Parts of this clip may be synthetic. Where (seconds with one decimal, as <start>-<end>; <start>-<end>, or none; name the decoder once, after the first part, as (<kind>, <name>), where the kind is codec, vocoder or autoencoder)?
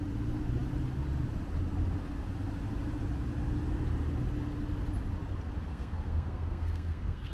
5.7-7.3 (codec, SNAC)